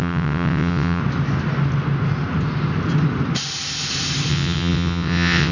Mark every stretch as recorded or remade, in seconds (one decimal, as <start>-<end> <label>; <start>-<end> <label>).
0.0-1.0 remade; 1.0-4.3 recorded; 4.3-5.5 remade